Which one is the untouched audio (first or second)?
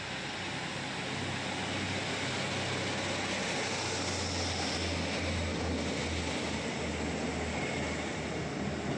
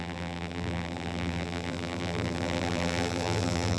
first